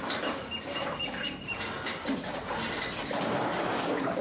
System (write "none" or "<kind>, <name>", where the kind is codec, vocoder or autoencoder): vocoder, BigVGAN v2